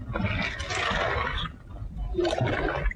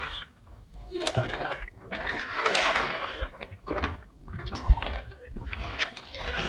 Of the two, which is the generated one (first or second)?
second